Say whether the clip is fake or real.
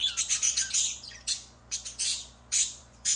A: fake